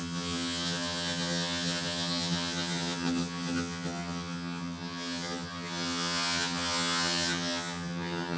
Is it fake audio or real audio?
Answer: fake